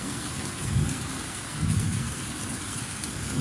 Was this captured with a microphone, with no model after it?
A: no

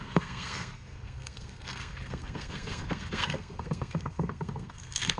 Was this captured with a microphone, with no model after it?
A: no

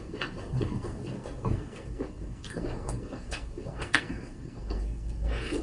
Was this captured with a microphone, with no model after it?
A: no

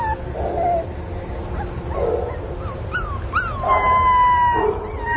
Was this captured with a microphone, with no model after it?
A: yes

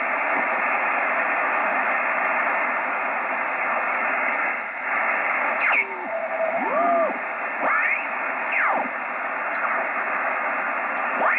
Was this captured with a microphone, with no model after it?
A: yes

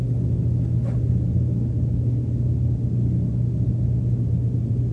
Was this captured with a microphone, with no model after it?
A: yes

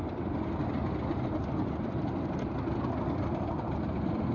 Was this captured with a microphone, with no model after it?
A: yes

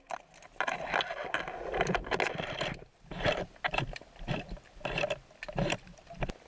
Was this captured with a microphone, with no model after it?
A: yes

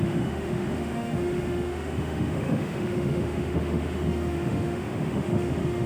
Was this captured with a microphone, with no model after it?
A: no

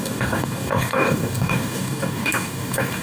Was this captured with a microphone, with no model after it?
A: no